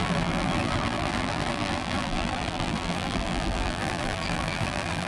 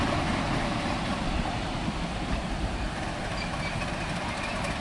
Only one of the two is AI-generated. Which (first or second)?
first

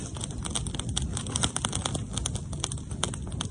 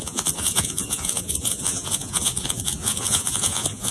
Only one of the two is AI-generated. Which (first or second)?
second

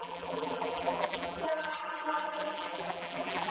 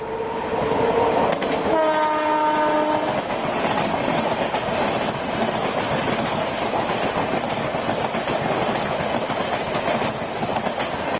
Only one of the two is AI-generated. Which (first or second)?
first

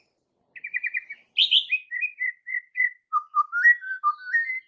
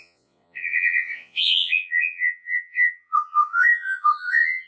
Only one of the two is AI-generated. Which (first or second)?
second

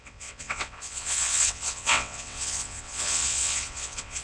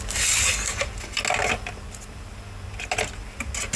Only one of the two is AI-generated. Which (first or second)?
first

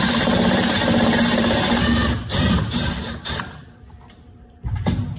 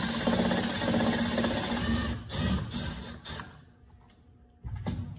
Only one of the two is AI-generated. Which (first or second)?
first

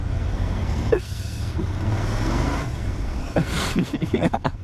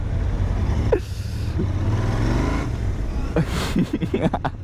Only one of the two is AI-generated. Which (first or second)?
first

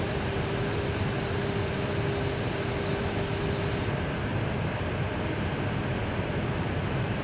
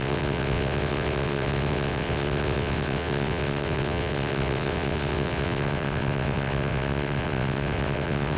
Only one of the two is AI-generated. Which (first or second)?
second